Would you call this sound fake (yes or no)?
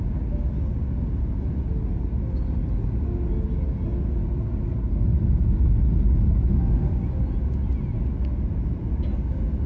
no